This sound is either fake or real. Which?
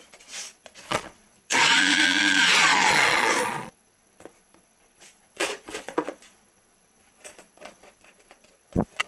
fake